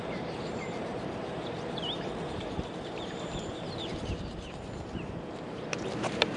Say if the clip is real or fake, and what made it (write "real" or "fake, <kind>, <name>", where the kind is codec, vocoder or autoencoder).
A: fake, vocoder, BigVGAN v2